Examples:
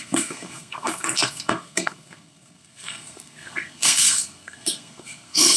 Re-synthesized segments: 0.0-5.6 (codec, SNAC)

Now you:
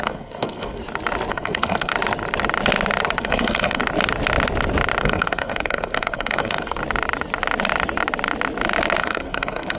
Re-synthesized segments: 0.0-0.8 (codec, SNAC); 1.3-1.9; 3.2-3.8; 5.0-6.8; 9.0-9.8